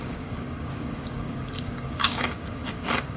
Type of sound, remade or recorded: remade